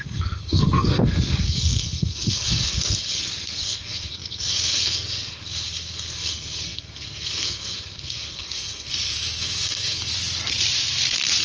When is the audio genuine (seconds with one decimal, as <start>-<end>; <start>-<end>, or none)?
10.1-11.4